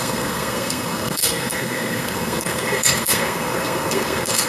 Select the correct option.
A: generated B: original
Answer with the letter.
A